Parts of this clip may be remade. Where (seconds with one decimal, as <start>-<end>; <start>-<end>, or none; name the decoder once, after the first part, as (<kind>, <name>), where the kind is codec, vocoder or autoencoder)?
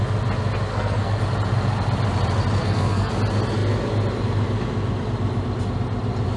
0.7-1.2 (codec, SNAC); 2.6-3.1